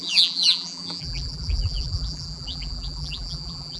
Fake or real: fake